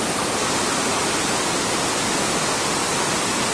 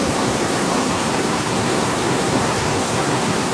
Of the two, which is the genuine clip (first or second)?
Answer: first